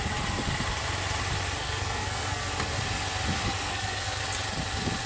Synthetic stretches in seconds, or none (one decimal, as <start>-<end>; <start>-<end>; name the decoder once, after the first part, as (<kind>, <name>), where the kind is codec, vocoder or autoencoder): 1.6-2.5 (codec, SNAC); 3.3-4.2